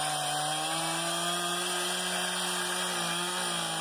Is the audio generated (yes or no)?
no